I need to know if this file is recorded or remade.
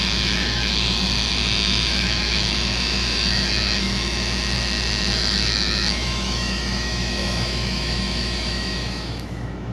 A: remade